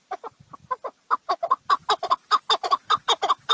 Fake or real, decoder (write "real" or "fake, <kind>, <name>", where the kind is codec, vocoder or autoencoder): real